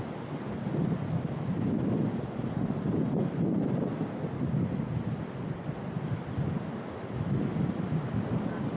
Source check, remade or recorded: recorded